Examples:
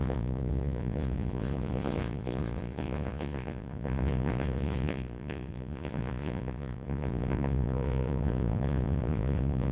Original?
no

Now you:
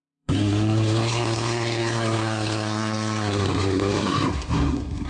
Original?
no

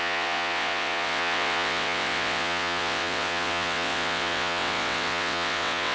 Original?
no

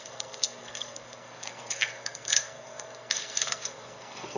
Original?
no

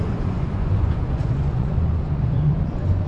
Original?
no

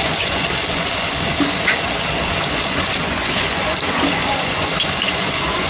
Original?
no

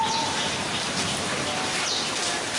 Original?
yes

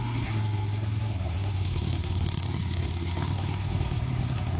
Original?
no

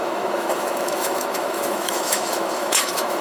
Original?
no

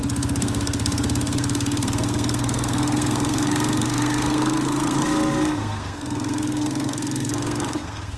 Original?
no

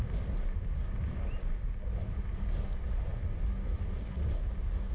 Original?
yes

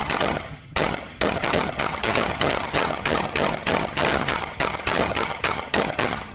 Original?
no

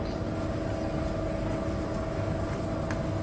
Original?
yes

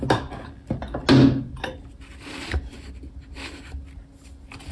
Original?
yes